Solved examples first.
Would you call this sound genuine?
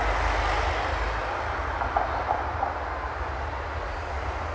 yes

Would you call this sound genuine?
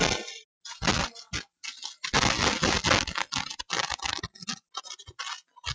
yes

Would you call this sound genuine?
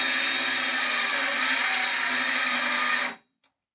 yes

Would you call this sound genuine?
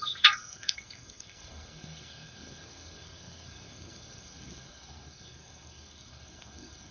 no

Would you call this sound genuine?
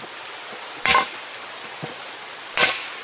yes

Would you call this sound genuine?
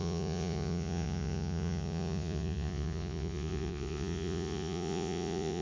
no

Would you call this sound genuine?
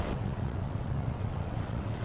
no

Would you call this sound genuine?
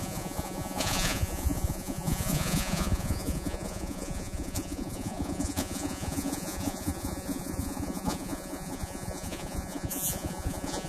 no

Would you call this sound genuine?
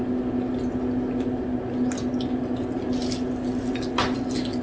yes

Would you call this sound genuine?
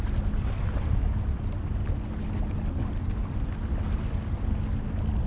yes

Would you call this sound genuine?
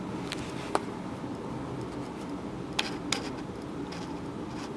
yes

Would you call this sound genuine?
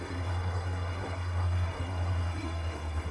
no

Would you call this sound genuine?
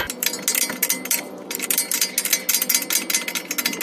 yes